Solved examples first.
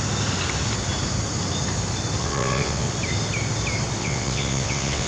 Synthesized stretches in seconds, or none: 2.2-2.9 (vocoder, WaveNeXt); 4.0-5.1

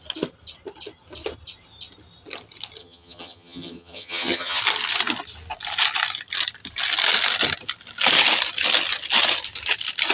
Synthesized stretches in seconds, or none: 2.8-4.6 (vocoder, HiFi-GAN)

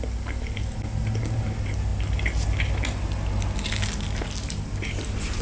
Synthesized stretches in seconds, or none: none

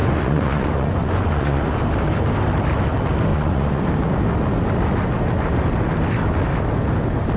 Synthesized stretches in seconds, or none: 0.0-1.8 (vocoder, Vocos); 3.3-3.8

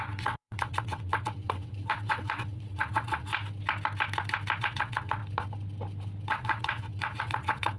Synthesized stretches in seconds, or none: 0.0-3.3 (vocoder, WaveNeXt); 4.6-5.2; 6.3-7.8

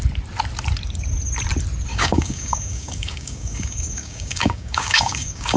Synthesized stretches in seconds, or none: 1.9-5.6 (codec, DAC)